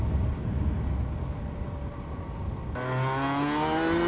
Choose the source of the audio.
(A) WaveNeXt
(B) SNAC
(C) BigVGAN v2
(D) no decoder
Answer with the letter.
D